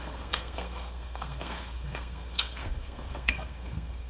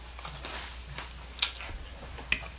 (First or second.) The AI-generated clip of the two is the first